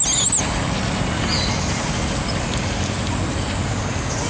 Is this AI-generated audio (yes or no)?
no